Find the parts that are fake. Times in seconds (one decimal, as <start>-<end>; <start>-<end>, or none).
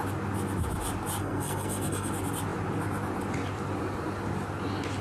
1.2-2.1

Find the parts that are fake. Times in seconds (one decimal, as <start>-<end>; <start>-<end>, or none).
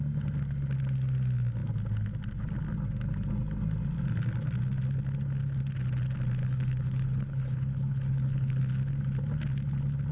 6.4-8.6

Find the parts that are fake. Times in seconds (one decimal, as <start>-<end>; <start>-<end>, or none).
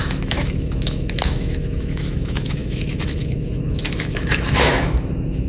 0.0-5.5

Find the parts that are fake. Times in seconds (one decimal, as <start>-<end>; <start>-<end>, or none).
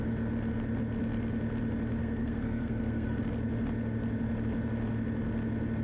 2.0-3.2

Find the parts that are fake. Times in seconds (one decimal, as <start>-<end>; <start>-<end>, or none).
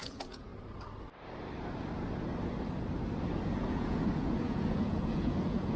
0.0-0.5; 3.7-5.8